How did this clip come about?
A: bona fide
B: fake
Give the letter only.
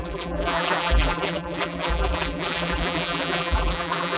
B